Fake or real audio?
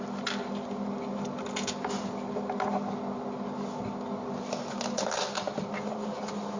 real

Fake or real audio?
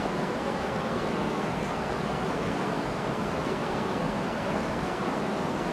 fake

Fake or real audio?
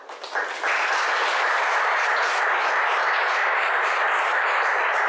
real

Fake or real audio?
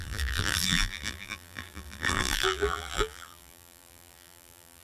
fake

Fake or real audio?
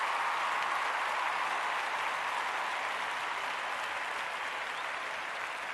real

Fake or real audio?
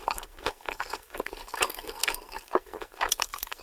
fake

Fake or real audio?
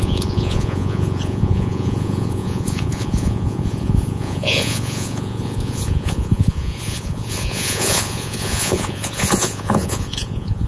fake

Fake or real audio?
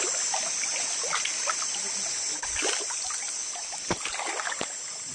real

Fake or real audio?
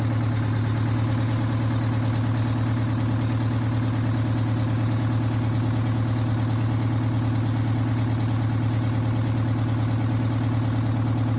real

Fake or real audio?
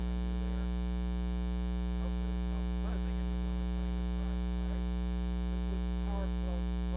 real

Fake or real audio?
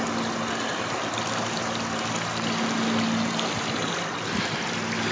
real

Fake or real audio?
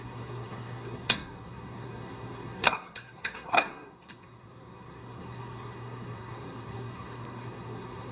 fake